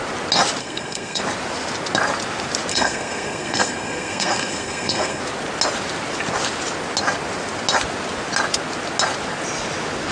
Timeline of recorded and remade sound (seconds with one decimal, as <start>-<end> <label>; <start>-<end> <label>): 0.0-0.6 recorded; 0.6-1.2 remade; 1.2-2.7 recorded; 2.7-5.2 remade; 5.2-10.1 recorded